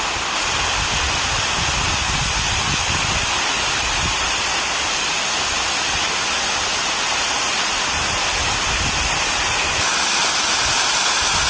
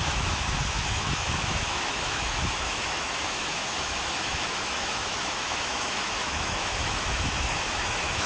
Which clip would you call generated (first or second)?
second